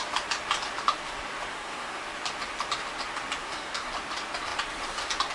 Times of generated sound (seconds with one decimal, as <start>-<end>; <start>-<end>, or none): 1.5-2.0; 3.4-3.9